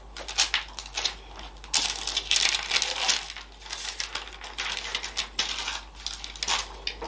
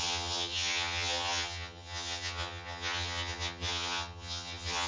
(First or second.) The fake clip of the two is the second